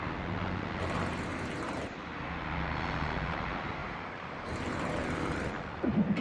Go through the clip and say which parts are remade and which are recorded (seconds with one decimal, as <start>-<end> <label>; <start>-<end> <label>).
0.0-1.3 recorded; 1.3-2.0 remade; 2.0-3.8 recorded; 3.8-5.2 remade; 5.2-6.2 recorded